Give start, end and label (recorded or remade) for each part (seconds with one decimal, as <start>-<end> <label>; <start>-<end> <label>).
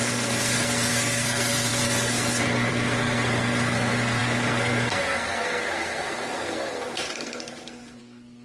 0.0-8.4 remade